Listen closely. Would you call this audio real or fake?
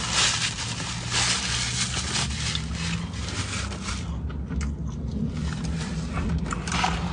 real